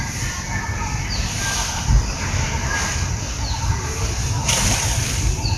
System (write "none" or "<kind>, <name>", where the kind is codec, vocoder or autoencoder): none